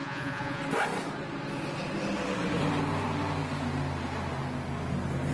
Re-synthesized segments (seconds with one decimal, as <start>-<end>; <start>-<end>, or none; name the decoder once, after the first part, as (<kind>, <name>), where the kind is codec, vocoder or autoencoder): 0.0-0.6 (vocoder, Vocos)